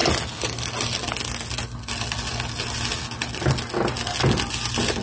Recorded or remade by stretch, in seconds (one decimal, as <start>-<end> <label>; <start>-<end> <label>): 0.0-5.0 recorded